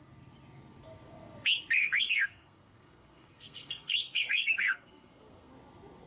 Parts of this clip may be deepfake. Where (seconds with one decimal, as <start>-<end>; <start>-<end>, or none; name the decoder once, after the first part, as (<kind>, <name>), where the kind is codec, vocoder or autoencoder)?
1.8-5.5 (codec, SNAC)